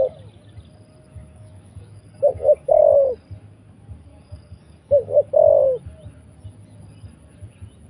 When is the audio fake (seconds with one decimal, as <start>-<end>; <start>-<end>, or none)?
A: 1.2-2.8; 4.1-5.3